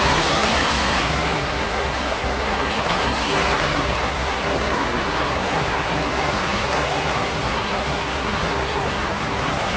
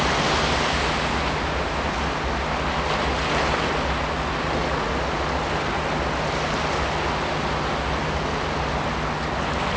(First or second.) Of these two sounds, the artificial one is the first